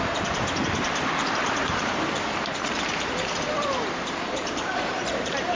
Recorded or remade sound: remade